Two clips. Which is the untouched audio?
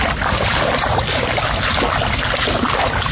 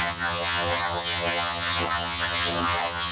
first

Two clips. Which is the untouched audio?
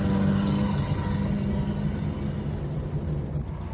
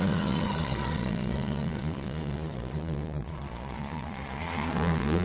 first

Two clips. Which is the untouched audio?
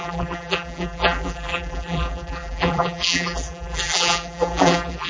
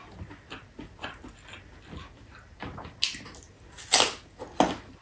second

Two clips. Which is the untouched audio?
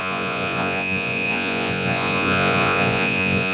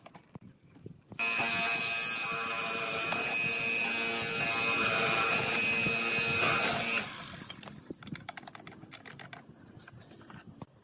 second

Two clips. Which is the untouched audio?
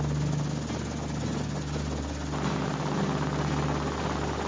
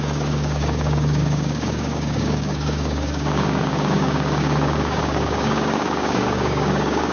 first